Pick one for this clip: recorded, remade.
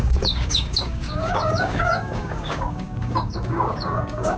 remade